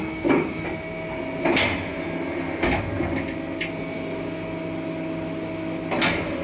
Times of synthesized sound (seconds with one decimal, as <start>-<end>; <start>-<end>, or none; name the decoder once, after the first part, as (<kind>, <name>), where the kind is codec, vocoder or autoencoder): 0.0-0.6 (codec, DAC)